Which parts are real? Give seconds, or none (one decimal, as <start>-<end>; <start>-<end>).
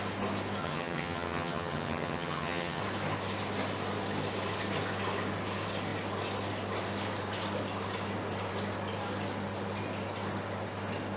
0.0-0.6; 2.8-11.2